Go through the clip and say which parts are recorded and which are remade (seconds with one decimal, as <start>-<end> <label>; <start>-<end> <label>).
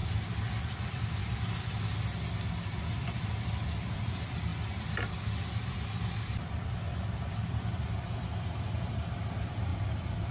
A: 0.0-0.6 recorded; 0.6-1.2 remade; 1.2-3.0 recorded; 3.0-4.5 remade; 4.5-5.1 recorded; 5.1-10.3 remade